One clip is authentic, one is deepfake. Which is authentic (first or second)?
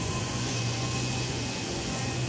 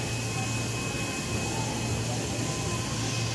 second